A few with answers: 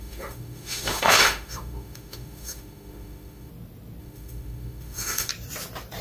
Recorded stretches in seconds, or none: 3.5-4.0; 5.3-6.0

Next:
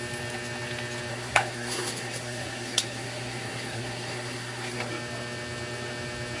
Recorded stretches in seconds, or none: 0.0-1.1; 4.9-6.4

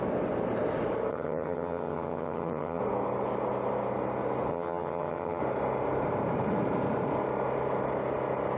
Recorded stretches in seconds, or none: 0.0-1.1; 2.8-4.5; 5.4-8.6

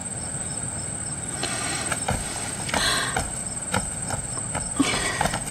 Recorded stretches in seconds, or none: 0.9-3.4; 4.3-5.5

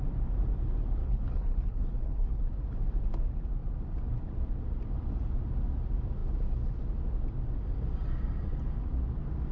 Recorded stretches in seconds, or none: 0.0-1.0; 2.4-9.5

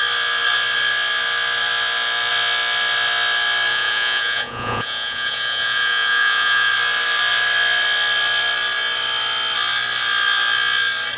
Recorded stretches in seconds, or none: 0.0-3.7; 6.7-11.2

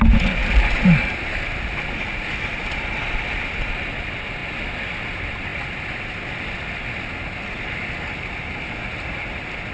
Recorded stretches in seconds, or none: 0.0-9.7